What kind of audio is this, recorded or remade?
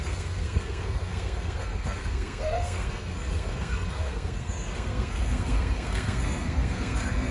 remade